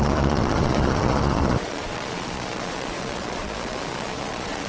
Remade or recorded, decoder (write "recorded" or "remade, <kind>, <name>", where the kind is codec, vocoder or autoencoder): remade, vocoder, Vocos